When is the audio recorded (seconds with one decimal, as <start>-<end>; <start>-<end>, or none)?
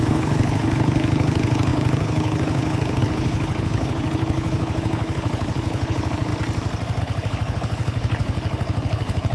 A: 6.3-7.0